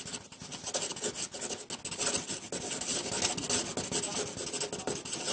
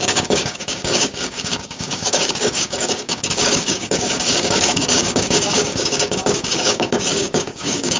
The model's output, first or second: second